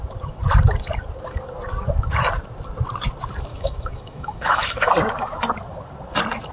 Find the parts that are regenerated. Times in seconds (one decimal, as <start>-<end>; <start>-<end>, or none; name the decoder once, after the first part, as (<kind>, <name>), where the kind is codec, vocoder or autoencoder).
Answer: 3.5-4.9 (autoencoder, DAC-VAE)